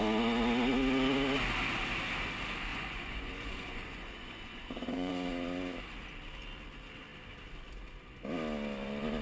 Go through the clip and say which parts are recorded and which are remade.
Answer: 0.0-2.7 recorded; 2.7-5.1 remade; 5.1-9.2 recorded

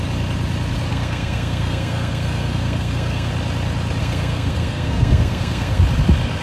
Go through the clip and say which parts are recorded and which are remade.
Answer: 0.0-0.9 recorded; 0.9-3.3 remade; 3.3-4.0 recorded; 4.0-5.8 remade; 5.8-6.4 recorded

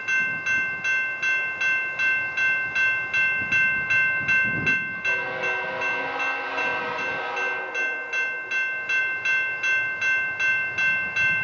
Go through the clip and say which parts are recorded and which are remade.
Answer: 0.0-11.4 recorded

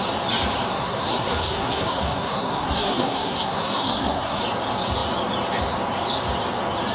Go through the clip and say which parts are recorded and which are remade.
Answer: 0.0-0.7 recorded; 0.7-4.4 remade; 4.4-6.9 recorded

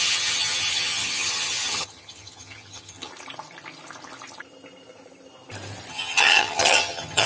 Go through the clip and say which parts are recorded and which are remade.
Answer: 0.0-3.1 remade; 3.1-5.9 recorded; 5.9-7.3 remade